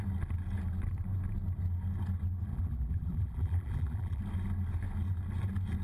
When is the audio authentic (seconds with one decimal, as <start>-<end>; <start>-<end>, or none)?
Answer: 0.0-2.5; 4.2-5.8